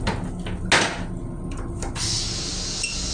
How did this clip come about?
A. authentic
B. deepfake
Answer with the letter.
A